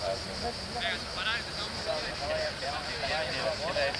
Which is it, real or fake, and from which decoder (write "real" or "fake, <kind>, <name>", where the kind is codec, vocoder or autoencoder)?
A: real